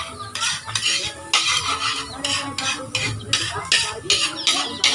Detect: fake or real real